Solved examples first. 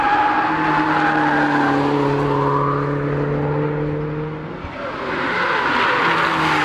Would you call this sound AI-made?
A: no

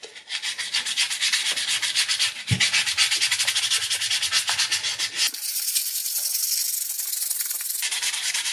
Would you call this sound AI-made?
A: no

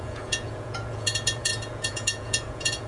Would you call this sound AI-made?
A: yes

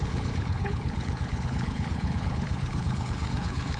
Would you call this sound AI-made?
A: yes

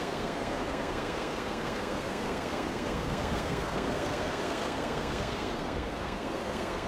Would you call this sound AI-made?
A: yes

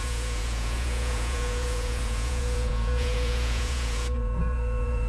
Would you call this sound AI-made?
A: yes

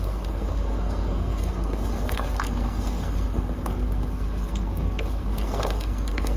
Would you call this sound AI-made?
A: yes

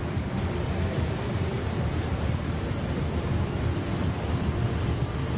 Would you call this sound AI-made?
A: yes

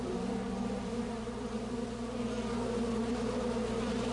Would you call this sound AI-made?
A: no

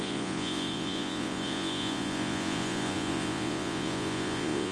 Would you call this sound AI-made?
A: yes